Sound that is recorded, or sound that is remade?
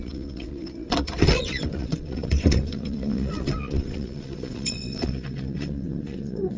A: remade